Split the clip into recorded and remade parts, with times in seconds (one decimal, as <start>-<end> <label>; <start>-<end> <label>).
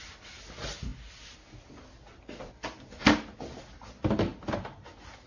0.0-5.3 recorded